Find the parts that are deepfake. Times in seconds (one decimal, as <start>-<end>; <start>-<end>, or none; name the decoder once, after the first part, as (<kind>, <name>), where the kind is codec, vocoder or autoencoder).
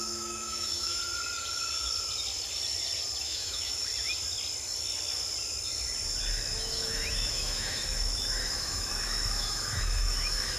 0.0-1.0 (autoencoder, DAC-VAE); 3.2-3.9; 6.5-10.6